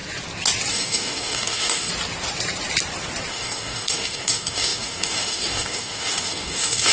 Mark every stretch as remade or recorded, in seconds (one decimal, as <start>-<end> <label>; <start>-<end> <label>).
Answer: 0.0-0.7 recorded; 0.7-1.9 remade; 1.9-3.3 recorded; 3.3-6.9 remade